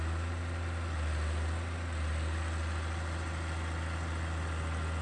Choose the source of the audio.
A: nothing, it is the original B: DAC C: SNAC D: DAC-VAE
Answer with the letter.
A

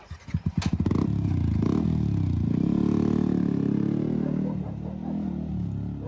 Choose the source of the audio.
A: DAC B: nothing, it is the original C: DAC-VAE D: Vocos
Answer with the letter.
B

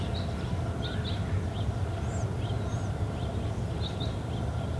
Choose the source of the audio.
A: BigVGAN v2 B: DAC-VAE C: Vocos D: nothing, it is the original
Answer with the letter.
D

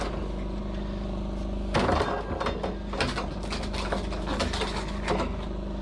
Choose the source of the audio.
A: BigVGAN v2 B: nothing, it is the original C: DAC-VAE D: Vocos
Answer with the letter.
B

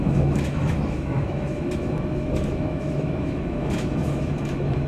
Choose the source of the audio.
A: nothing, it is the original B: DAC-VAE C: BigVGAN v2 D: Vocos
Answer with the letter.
B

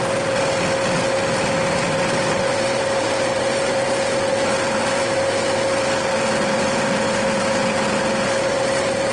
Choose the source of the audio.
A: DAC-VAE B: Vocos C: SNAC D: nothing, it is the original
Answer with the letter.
D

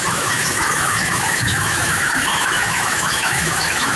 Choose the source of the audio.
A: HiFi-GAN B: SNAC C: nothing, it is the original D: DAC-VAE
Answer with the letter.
D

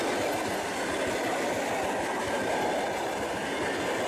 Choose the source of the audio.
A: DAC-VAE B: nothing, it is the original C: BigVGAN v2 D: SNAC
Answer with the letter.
B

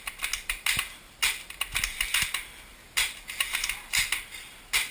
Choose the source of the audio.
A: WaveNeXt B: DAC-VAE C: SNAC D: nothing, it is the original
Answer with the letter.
D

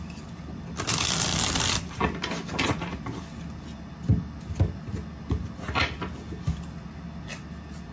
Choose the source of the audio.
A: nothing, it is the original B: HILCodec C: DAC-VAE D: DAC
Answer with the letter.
A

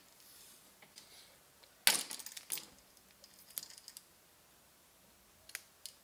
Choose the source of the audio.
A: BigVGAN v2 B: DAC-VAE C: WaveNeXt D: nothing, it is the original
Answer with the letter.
D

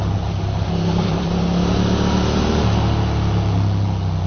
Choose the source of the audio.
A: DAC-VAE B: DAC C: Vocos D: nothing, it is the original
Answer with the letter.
D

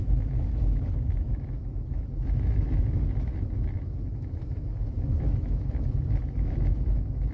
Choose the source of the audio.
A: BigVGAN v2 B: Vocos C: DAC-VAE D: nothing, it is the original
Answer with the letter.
C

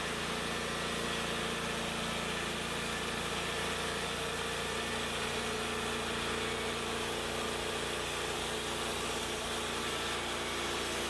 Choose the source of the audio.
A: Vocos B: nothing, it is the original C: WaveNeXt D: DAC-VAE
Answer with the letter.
B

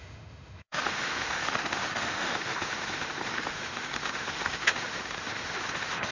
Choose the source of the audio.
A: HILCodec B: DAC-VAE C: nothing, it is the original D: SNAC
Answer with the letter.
B